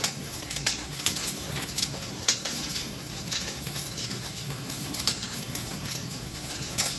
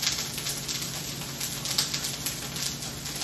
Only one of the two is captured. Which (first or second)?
second